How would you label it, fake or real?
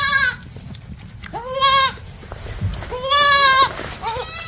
real